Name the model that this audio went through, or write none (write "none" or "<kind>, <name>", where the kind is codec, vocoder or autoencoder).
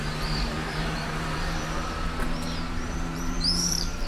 vocoder, BigVGAN v2